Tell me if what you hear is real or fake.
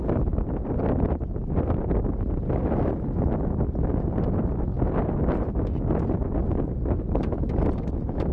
real